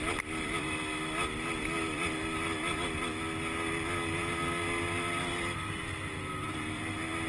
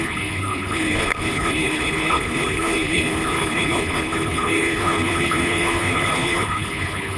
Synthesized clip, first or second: second